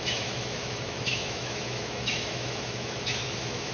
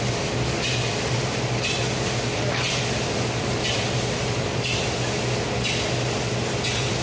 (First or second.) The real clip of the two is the second